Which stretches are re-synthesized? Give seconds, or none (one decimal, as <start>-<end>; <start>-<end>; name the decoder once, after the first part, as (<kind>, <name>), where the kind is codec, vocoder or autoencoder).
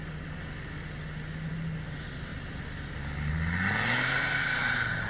none